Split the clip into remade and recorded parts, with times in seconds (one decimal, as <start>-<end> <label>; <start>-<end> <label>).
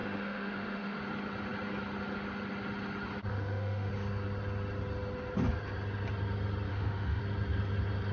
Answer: 0.0-1.0 remade; 1.0-3.3 recorded; 3.3-3.9 remade; 3.9-6.7 recorded; 6.7-7.2 remade; 7.2-8.1 recorded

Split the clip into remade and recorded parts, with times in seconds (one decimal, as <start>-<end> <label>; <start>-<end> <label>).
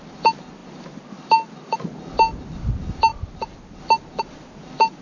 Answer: 0.0-5.0 recorded